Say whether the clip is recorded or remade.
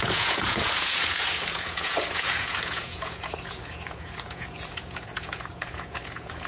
remade